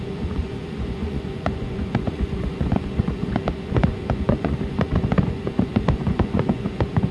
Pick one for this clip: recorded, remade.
remade